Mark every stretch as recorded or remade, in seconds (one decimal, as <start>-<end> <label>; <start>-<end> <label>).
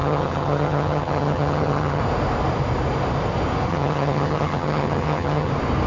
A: 0.0-2.0 remade; 2.0-3.7 recorded; 3.7-5.5 remade; 5.5-5.9 recorded